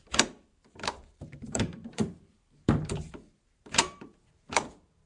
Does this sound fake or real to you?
fake